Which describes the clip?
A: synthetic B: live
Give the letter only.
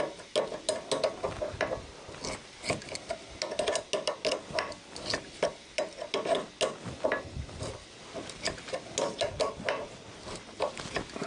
B